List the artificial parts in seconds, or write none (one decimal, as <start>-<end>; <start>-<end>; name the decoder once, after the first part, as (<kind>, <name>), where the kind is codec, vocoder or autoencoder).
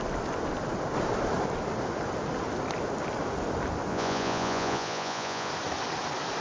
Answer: 3.9-5.5 (vocoder, Vocos)